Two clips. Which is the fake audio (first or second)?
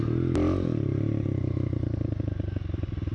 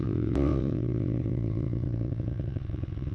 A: second